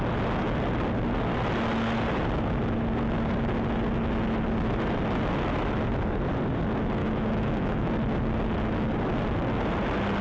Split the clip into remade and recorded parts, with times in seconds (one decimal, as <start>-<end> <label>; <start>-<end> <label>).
0.0-7.0 recorded; 7.0-7.9 remade; 7.9-10.2 recorded

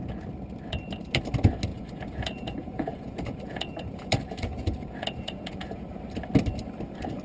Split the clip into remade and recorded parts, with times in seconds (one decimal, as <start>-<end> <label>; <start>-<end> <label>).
0.0-1.7 recorded; 1.7-6.0 remade; 6.0-7.2 recorded

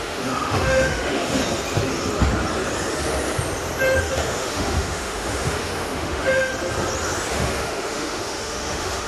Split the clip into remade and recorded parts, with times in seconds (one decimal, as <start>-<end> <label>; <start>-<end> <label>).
0.0-1.4 remade; 1.4-4.0 recorded; 4.0-6.5 remade; 6.5-7.3 recorded; 7.3-9.1 remade

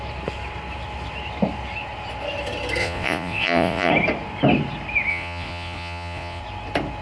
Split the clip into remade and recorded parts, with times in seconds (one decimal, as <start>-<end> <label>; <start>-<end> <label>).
0.0-2.8 recorded; 2.8-3.9 remade; 3.9-5.1 recorded; 5.1-6.4 remade; 6.4-7.0 recorded

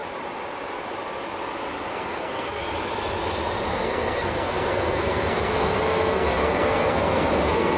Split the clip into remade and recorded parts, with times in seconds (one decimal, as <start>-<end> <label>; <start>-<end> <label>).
0.0-1.9 recorded; 1.9-2.6 remade; 2.6-3.7 recorded; 3.7-7.8 remade

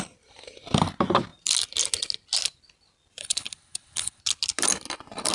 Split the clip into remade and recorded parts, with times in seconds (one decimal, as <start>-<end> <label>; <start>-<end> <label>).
0.0-3.2 recorded; 3.2-4.2 remade; 4.2-5.3 recorded